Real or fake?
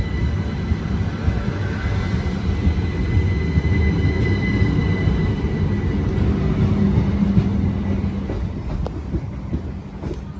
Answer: real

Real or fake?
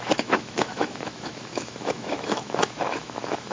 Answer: fake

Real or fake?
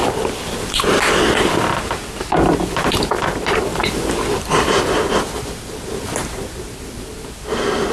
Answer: fake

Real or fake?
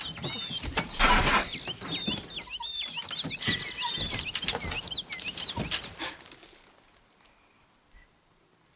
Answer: real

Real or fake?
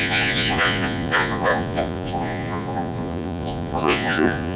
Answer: fake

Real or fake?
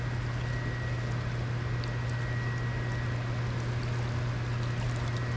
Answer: real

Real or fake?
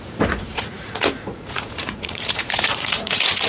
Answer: fake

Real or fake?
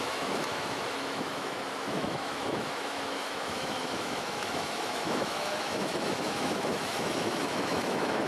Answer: fake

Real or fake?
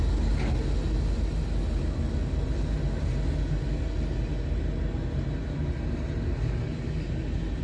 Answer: real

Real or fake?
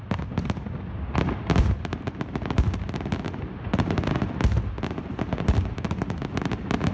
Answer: real